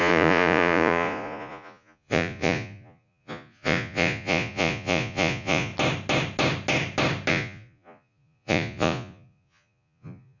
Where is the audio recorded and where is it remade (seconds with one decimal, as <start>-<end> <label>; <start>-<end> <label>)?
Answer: 0.0-5.7 remade; 5.7-7.3 recorded; 7.3-10.4 remade